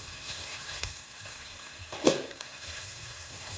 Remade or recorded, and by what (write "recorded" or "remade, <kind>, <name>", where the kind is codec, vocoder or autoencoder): remade, codec, SNAC